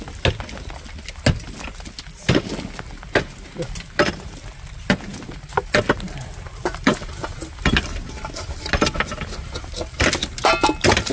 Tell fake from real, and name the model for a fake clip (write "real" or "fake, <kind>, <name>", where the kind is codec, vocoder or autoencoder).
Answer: real